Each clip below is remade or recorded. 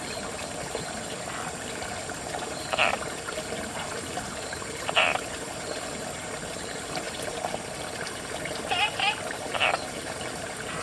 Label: remade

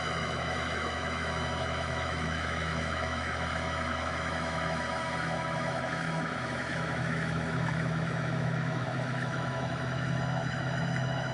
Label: remade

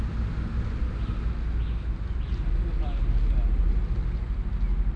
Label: recorded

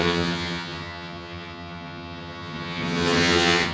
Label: remade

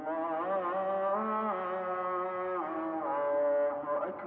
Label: recorded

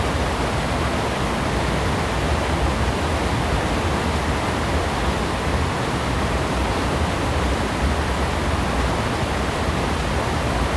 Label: recorded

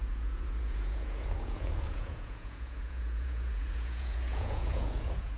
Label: remade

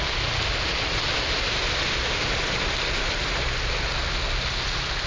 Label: recorded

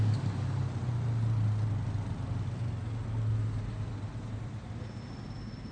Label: recorded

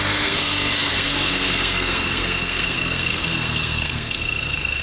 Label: remade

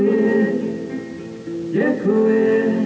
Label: recorded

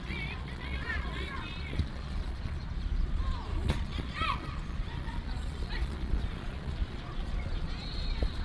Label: remade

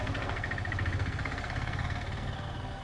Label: remade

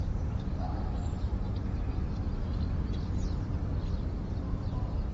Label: recorded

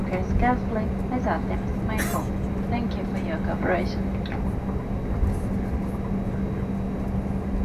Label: recorded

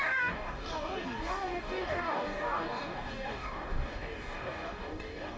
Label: remade